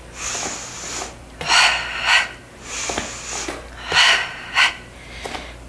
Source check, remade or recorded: recorded